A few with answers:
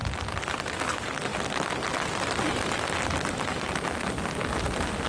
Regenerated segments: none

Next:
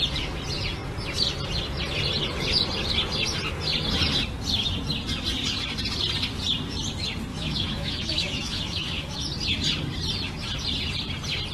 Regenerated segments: 7.3-9.2 (autoencoder, DAC-VAE)

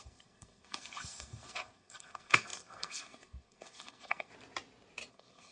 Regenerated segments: 0.0-4.3 (codec, SNAC); 5.1-5.5